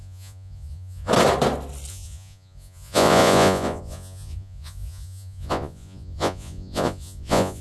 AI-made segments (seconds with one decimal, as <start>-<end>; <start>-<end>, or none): 0.0-1.1; 1.9-7.6